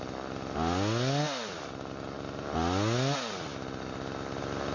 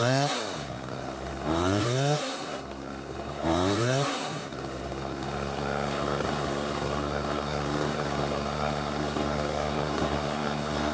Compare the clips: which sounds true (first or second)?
first